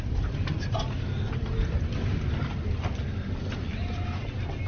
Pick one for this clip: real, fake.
real